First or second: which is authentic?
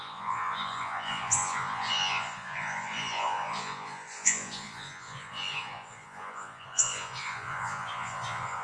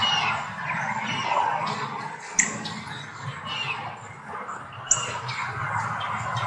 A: second